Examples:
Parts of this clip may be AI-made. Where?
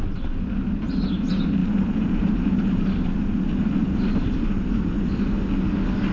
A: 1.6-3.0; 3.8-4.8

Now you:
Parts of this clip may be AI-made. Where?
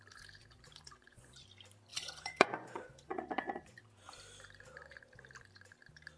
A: 0.4-1.3; 1.9-3.8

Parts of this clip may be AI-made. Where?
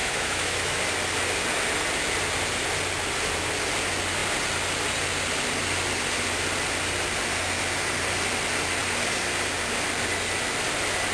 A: 0.0-0.8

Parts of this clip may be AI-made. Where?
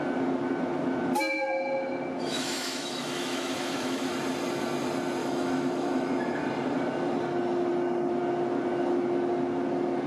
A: 2.3-4.1; 5.2-6.1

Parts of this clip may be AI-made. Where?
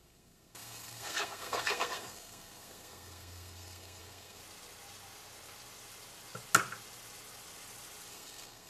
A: 0.0-4.4; 8.1-8.7